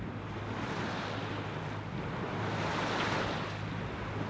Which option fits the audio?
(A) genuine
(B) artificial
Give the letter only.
A